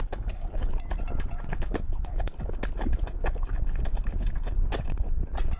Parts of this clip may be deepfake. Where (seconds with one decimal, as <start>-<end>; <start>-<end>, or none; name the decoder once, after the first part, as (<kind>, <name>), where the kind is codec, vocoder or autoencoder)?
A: 0.0-0.7 (codec, HILCodec); 1.5-2.3